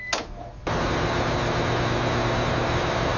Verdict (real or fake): real